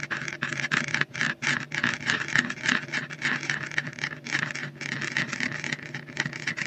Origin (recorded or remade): recorded